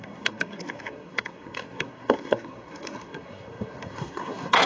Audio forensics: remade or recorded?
remade